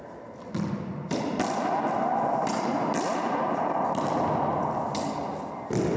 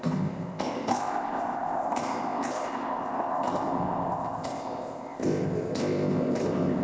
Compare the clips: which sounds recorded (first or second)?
first